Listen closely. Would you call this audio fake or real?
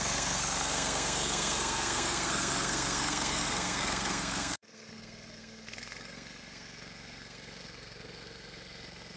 fake